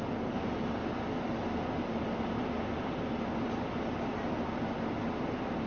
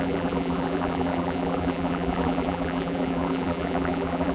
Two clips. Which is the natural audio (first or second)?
first